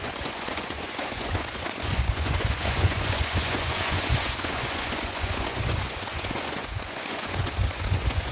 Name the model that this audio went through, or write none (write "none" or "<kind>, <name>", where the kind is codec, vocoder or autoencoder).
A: vocoder, Vocos